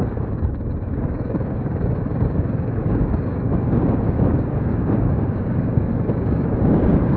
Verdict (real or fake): fake